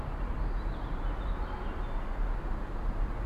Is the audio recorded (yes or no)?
yes